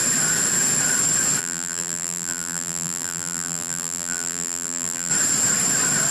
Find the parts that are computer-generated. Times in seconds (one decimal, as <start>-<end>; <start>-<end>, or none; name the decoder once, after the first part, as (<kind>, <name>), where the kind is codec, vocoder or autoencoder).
1.4-5.1 (vocoder, BigVGAN v2)